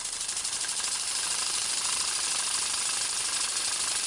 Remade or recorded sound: remade